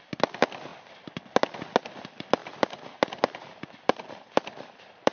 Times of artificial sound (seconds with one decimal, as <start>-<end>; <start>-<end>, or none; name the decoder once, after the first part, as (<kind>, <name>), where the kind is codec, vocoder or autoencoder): 0.7-1.2 (vocoder, BigVGAN v2); 3.4-5.1